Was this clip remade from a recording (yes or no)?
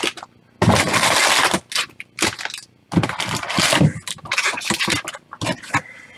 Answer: no